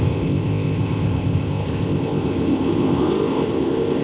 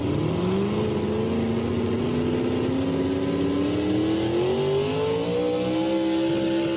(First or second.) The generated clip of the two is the first